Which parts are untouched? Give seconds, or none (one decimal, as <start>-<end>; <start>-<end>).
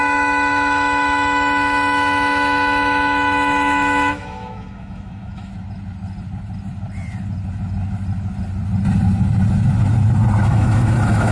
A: 5.5-10.4